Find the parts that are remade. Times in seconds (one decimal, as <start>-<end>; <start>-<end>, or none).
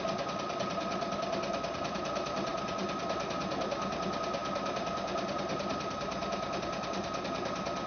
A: none